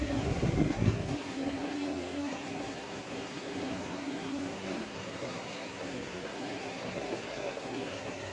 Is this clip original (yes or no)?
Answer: no